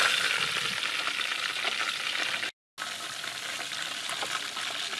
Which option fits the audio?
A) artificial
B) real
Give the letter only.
B